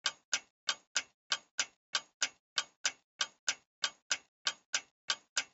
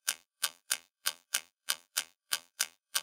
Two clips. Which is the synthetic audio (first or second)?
second